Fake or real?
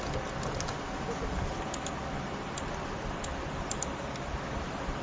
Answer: real